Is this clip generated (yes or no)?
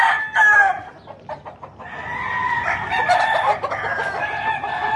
no